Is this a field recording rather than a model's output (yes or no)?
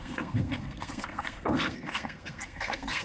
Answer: no